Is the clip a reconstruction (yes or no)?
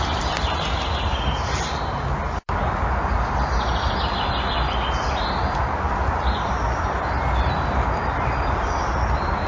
no